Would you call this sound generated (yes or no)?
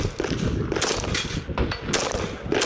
no